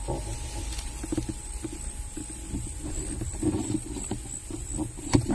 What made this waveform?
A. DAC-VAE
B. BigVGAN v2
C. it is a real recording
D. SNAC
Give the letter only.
C